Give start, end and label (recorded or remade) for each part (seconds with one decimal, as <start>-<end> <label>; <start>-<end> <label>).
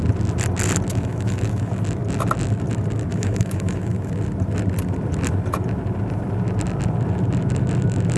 0.0-0.9 recorded; 0.9-1.7 remade; 1.7-3.1 recorded; 3.1-4.1 remade; 4.1-8.2 recorded